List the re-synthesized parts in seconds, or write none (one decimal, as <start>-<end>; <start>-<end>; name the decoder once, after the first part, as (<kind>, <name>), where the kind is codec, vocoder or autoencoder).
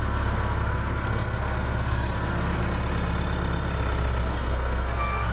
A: 0.0-2.6 (codec, SNAC); 4.3-5.3